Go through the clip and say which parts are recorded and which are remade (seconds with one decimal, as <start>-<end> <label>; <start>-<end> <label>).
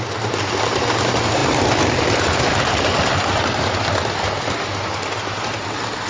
0.0-6.1 recorded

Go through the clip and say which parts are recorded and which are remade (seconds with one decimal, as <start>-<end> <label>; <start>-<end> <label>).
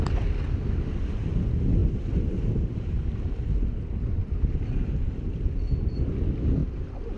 0.0-1.8 recorded; 1.8-3.5 remade; 3.5-4.2 recorded; 4.2-5.5 remade; 5.5-6.6 recorded; 6.6-7.2 remade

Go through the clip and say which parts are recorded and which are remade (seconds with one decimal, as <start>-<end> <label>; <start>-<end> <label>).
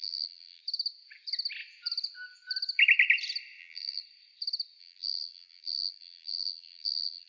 0.0-0.6 remade; 0.6-3.6 recorded; 3.6-4.0 remade; 4.0-4.8 recorded; 4.8-7.3 remade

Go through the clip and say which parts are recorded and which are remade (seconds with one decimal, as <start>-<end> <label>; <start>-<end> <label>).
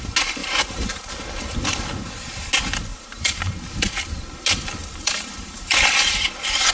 0.0-0.4 recorded; 0.4-1.0 remade; 1.0-2.9 recorded; 2.9-3.6 remade; 3.6-4.8 recorded; 4.8-6.2 remade; 6.2-6.7 recorded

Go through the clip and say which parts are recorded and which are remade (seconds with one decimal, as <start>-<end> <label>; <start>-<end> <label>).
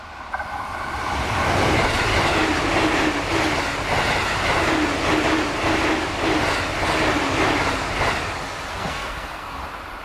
0.0-8.7 recorded; 8.7-9.6 remade; 9.6-10.0 recorded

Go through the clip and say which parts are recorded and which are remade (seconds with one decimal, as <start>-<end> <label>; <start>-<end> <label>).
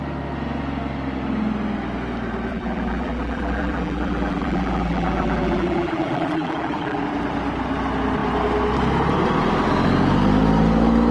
0.0-2.5 recorded; 2.5-7.0 remade; 7.0-11.1 recorded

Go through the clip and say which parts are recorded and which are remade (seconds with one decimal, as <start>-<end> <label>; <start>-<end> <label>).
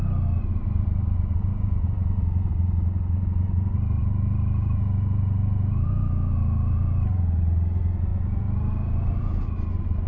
0.0-1.5 recorded; 1.5-2.5 remade; 2.5-4.0 recorded; 4.0-7.4 remade; 7.4-8.1 recorded; 8.1-9.4 remade; 9.4-10.1 recorded